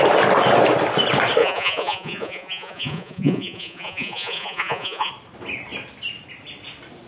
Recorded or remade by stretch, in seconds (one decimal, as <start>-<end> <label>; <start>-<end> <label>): 0.0-1.4 recorded; 1.4-5.1 remade; 5.1-7.1 recorded